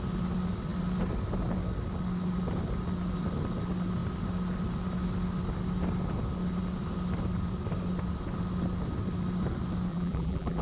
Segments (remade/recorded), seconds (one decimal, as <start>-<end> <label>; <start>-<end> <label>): 0.0-9.9 recorded; 9.9-10.6 remade